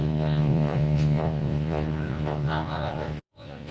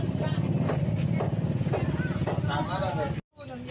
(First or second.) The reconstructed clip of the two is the first